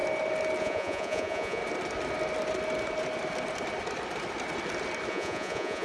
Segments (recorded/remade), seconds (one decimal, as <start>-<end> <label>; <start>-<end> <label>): 0.0-0.6 recorded; 0.6-1.6 remade; 1.6-5.1 recorded; 5.1-5.8 remade